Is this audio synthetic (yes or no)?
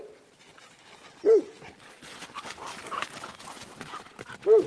no